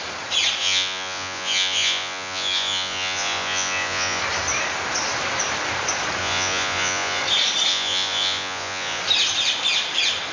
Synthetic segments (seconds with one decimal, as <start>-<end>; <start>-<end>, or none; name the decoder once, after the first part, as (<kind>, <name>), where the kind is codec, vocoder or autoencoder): 0.6-4.2 (vocoder, Vocos); 6.2-7.2; 7.7-9.0